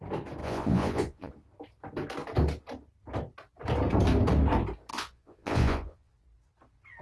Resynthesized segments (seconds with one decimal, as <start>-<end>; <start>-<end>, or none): 0.4-1.3; 4.9-6.1